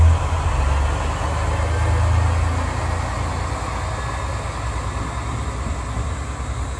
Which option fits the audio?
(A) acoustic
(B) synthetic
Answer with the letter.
A